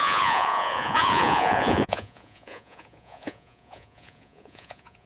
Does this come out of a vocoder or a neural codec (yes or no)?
yes